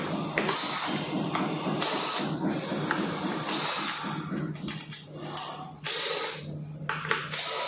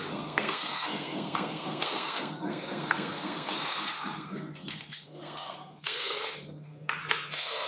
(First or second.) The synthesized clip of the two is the second